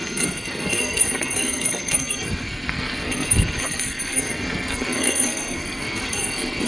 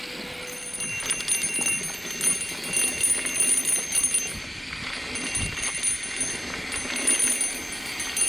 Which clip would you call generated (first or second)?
first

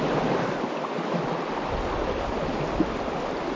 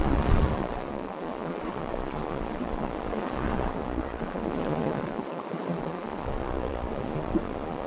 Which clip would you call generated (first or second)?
second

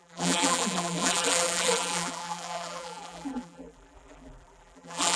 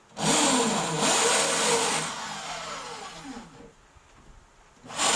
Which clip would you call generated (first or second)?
first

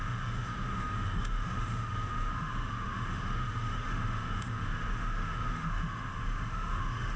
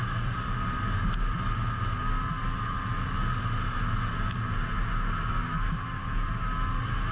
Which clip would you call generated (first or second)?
first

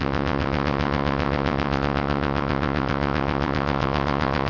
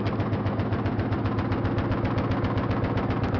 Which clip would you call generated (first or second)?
first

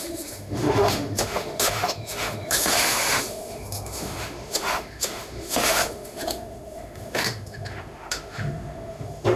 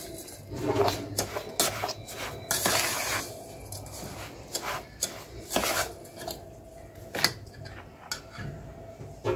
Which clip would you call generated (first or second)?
first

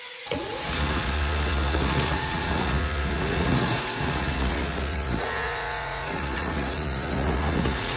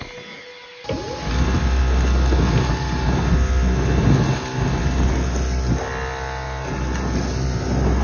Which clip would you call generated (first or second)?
first